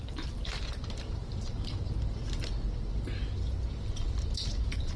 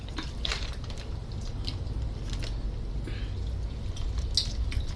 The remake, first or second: first